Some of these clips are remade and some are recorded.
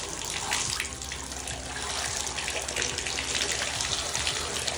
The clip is recorded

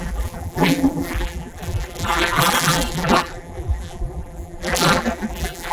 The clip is remade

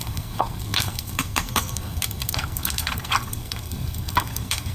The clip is remade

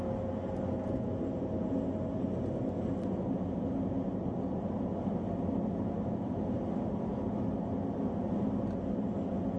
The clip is recorded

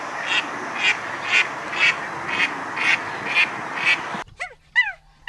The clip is recorded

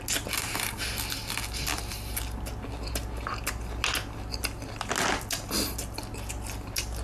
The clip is recorded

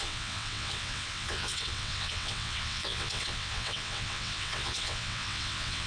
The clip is remade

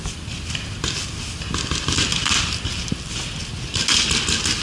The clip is recorded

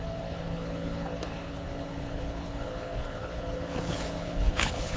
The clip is remade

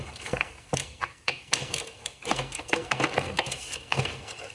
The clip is remade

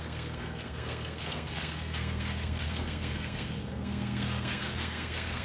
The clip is remade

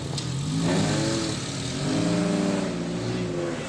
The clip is recorded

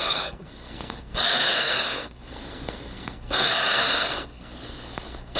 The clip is remade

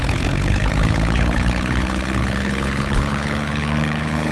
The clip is remade